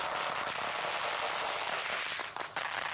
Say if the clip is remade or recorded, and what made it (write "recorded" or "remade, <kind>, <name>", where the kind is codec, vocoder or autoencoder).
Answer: recorded